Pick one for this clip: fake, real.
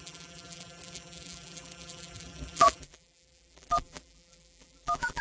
fake